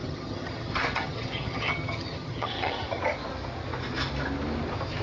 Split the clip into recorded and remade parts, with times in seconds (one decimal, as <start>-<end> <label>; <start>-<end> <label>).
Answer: 0.0-3.0 remade; 3.0-5.0 recorded

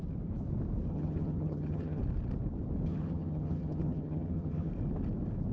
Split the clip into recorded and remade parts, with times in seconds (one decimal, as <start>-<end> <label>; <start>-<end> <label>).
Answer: 0.0-0.9 recorded; 0.9-2.0 remade; 2.0-2.9 recorded; 2.9-4.7 remade; 4.7-5.5 recorded

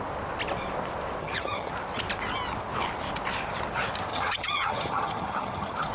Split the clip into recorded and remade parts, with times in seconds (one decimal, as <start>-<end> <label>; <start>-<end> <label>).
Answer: 0.0-1.2 recorded; 1.2-1.7 remade; 1.7-4.1 recorded; 4.1-5.9 remade

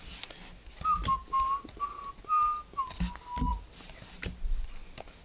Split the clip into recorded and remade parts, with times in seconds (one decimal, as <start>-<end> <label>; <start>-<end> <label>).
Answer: 0.0-5.2 recorded

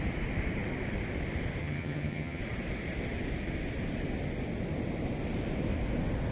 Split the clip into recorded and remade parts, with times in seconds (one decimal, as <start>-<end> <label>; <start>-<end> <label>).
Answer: 0.0-1.6 recorded; 1.6-2.4 remade; 2.4-6.3 recorded

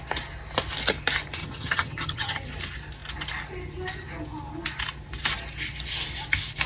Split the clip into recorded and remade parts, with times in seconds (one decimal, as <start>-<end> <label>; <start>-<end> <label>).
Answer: 0.0-1.4 recorded; 1.4-2.4 remade; 2.4-6.7 recorded